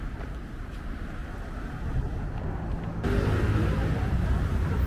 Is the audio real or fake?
real